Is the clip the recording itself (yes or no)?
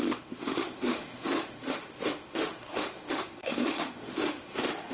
no